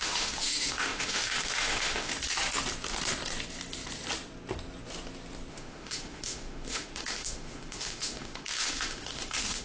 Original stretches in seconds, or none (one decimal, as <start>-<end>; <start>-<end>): 2.1-5.5